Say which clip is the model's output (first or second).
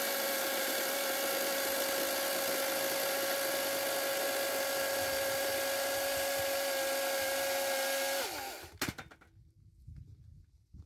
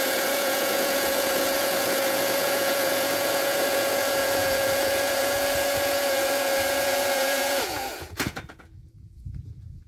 second